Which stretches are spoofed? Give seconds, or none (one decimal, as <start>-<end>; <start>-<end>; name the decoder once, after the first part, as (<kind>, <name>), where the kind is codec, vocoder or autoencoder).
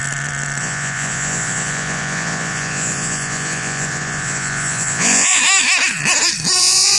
0.6-5.4 (vocoder, Vocos); 6.6-7.0